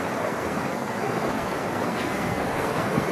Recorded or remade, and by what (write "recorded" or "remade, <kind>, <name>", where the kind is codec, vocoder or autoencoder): remade, codec, SNAC